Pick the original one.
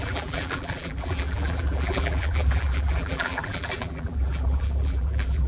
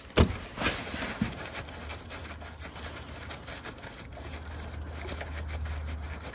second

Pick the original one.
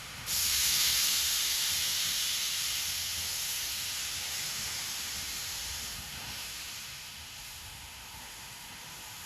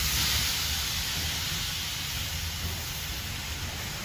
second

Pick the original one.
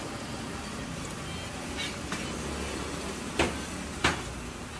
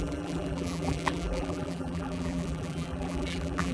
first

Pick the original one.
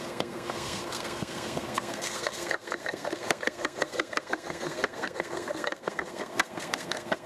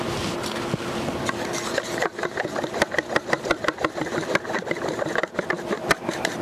second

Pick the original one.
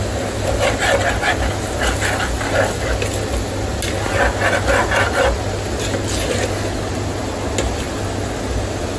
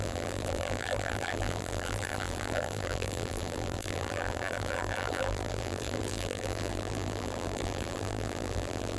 first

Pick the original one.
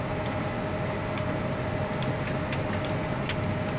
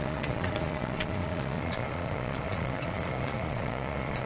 first